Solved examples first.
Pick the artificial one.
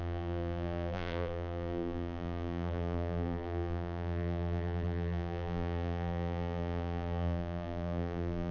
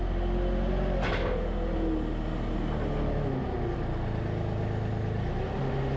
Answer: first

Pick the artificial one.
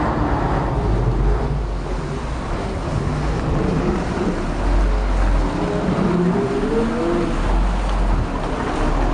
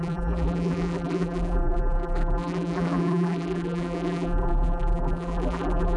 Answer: second